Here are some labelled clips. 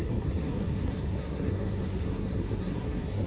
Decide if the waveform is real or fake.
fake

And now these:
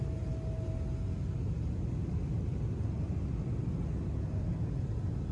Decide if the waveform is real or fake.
real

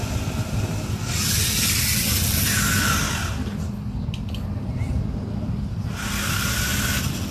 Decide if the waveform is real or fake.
real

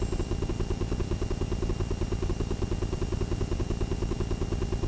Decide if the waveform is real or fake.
real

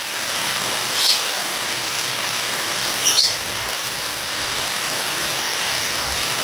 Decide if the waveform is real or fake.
fake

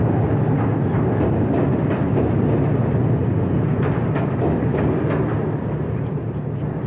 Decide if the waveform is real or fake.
real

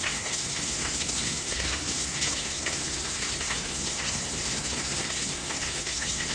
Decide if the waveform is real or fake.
fake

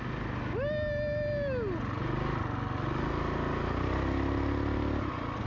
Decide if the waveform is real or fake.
real